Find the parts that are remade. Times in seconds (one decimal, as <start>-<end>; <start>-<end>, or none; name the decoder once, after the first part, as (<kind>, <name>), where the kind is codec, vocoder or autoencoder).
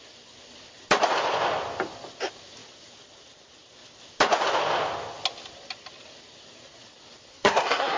7.3-8.0 (codec, SNAC)